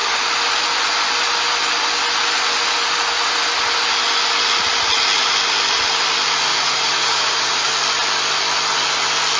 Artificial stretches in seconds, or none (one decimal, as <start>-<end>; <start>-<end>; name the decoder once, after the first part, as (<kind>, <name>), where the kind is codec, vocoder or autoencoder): 6.5-7.7 (vocoder, Vocos)